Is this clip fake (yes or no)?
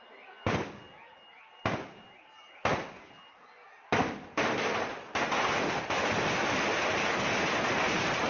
no